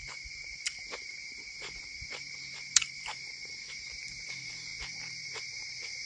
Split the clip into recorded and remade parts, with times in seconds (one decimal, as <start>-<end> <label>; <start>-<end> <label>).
0.0-6.1 remade